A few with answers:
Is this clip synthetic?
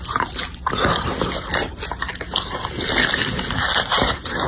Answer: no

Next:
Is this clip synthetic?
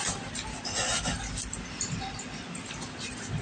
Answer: no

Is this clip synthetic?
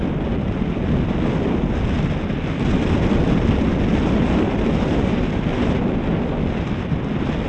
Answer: no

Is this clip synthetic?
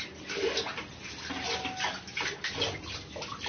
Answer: no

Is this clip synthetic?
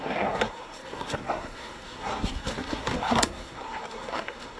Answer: yes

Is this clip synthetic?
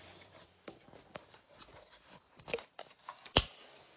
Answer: yes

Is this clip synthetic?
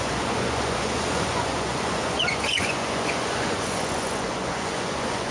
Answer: yes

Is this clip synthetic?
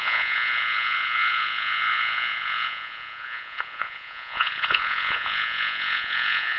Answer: yes